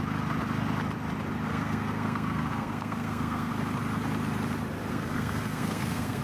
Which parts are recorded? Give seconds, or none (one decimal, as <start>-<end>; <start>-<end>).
0.0-1.5; 3.5-4.9